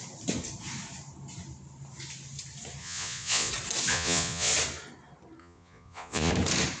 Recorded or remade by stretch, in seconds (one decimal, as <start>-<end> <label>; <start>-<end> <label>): 0.0-2.8 recorded; 2.8-3.5 remade; 3.5-3.9 recorded; 3.9-4.5 remade; 4.5-5.4 recorded; 5.4-6.3 remade; 6.3-6.8 recorded